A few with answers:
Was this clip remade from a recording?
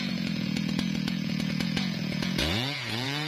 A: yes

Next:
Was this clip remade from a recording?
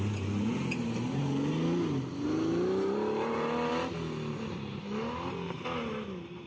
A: no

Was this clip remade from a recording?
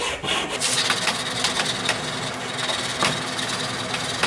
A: no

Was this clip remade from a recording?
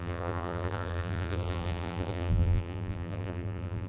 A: yes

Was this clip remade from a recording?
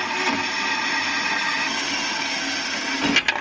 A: no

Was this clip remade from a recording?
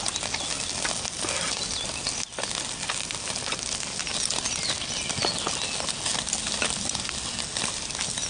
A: no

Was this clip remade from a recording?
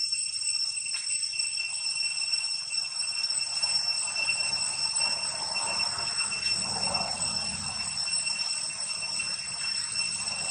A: no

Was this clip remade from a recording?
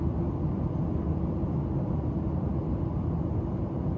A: no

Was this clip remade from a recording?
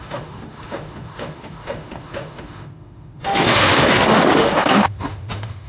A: yes